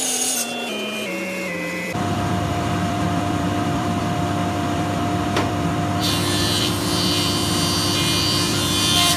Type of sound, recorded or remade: remade